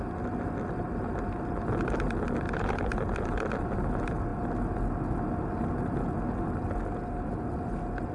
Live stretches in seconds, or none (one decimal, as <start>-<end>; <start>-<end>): 0.0-8.1